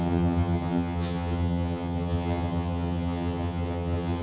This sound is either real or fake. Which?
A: fake